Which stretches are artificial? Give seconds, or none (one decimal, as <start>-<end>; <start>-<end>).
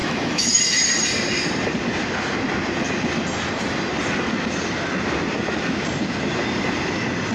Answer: 0.0-0.6